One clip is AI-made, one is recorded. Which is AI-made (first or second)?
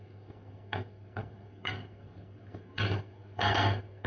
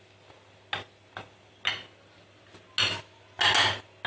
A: first